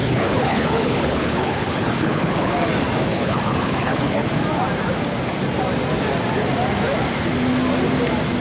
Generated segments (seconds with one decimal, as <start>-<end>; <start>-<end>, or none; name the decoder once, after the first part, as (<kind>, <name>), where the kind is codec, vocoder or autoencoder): 0.0-2.5 (codec, HILCodec); 3.1-4.3

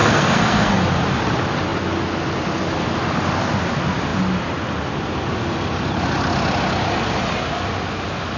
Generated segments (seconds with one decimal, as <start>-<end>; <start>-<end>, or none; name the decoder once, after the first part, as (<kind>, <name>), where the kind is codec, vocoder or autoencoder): 0.0-0.7 (codec, SNAC)

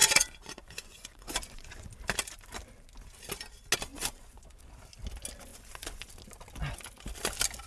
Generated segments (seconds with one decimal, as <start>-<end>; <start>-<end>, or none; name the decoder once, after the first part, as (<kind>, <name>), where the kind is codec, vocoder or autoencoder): 0.0-1.9 (vocoder, Vocos); 3.9-4.6; 5.5-6.1

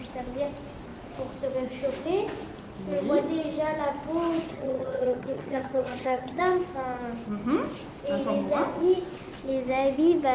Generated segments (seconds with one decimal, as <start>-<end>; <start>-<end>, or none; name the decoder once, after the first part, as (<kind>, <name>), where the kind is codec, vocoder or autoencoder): 4.5-6.4 (vocoder, HiFi-GAN)